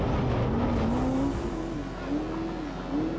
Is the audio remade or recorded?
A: recorded